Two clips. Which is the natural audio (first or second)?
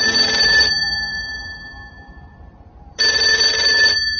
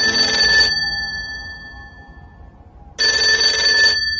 second